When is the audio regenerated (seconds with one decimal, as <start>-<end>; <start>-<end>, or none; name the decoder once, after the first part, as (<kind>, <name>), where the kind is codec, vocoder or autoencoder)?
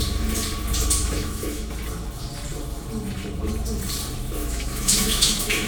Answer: 1.0-1.7 (autoencoder, DAC-VAE); 4.4-5.7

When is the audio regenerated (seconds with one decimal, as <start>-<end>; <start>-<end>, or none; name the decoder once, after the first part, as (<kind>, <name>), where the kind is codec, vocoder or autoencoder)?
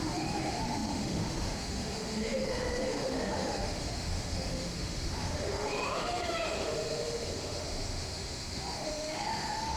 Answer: 0.0-9.8 (autoencoder, DAC-VAE)